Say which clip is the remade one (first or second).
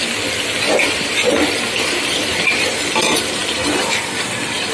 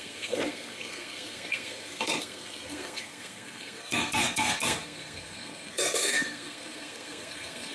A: second